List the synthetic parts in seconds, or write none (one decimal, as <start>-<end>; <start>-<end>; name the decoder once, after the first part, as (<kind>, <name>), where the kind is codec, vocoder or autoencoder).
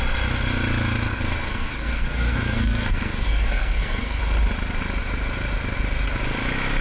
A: 1.1-4.2 (codec, SNAC)